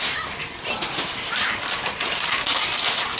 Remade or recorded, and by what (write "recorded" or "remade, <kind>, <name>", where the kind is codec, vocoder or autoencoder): recorded